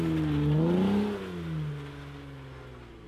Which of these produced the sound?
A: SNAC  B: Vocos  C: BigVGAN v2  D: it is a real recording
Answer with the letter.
D